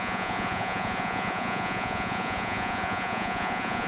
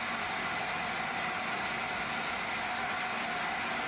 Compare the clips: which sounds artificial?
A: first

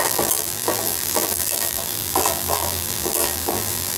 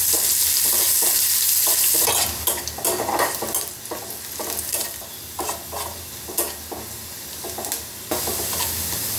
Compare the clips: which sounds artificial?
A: first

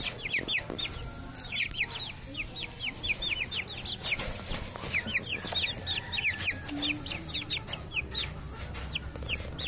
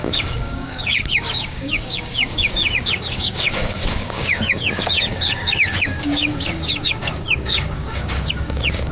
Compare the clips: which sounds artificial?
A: second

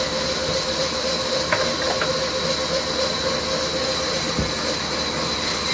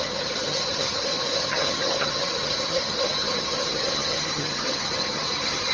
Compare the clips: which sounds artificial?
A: second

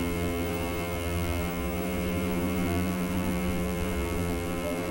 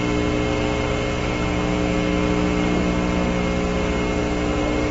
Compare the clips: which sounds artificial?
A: first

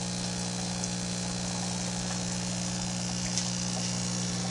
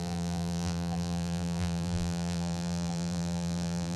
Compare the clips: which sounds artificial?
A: second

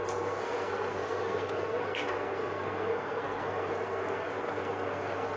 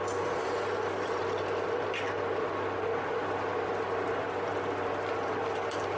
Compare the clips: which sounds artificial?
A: first